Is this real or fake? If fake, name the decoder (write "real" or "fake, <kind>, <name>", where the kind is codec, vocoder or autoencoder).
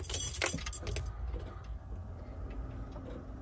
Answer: real